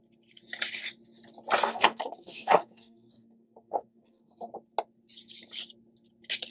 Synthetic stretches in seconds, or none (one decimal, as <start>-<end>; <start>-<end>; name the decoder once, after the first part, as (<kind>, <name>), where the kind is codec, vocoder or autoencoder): 1.6-4.5 (codec, SNAC)